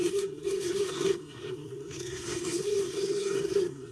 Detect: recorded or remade remade